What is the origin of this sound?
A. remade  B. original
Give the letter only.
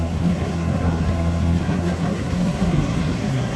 A